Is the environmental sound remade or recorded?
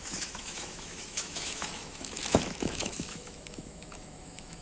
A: remade